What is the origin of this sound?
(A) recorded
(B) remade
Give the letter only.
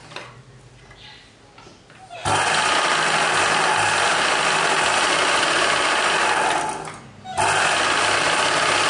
A